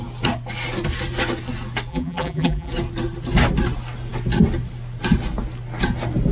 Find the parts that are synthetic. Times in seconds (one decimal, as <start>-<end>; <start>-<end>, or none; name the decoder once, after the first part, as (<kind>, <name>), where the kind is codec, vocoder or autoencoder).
1.9-2.7 (vocoder, BigVGAN v2)